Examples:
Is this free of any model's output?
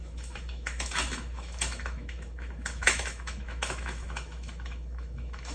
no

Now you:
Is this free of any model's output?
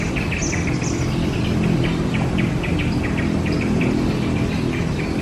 yes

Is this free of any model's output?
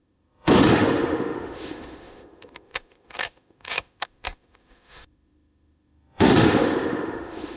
no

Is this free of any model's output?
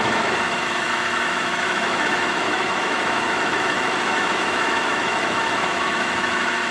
no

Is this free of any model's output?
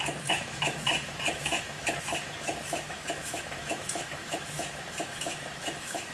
no